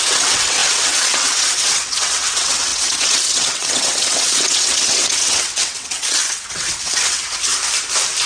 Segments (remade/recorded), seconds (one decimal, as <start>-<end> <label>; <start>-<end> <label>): 0.0-7.5 remade; 7.5-8.3 recorded